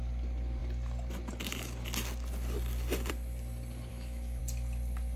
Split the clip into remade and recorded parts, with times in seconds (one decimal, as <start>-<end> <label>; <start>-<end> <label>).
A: 0.0-3.9 recorded; 3.9-4.4 remade; 4.4-5.2 recorded